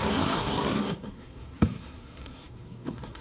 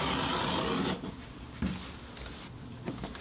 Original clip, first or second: second